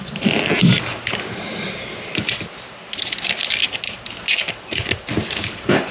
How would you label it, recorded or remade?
recorded